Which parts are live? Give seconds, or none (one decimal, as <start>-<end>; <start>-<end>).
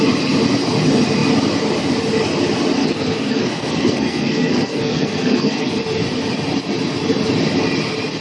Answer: 0.0-2.8; 5.8-8.2